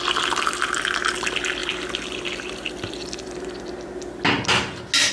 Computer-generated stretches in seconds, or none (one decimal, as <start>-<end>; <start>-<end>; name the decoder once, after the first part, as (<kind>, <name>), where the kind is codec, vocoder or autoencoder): none